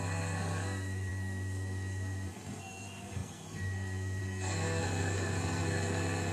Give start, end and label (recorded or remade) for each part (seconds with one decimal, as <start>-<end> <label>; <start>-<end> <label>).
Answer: 0.0-6.3 remade